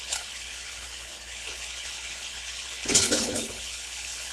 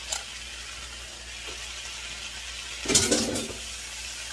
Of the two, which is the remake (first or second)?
first